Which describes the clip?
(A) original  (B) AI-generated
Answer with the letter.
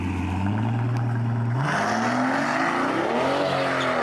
A